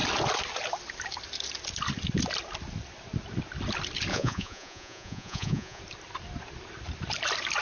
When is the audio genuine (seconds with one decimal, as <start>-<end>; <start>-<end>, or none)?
0.0-4.1; 5.8-7.6